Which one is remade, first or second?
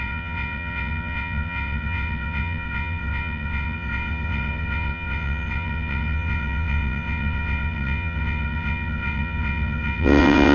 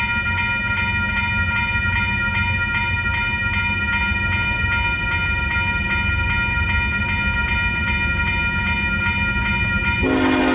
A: first